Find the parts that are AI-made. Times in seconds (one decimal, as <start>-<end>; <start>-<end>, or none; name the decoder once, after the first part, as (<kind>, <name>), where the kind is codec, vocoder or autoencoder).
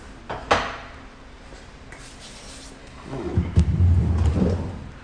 2.8-3.3 (codec, DAC)